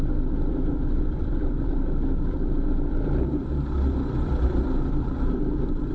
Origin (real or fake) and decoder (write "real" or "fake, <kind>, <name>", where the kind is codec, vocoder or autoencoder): fake, vocoder, BigVGAN v2